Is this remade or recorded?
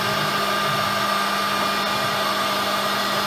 recorded